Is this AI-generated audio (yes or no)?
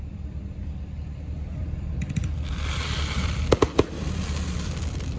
yes